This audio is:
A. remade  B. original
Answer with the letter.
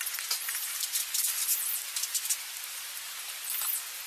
B